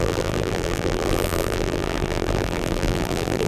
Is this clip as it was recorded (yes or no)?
no